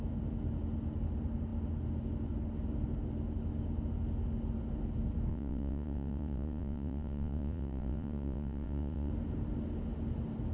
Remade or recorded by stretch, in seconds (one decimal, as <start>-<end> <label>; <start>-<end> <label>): 0.0-5.3 recorded; 5.3-9.1 remade; 9.1-10.5 recorded